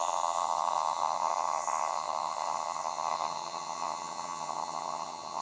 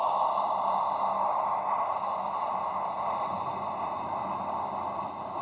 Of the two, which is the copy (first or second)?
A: first